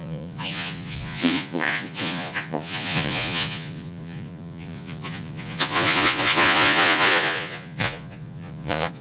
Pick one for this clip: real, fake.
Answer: fake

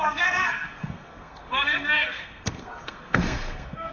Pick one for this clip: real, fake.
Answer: fake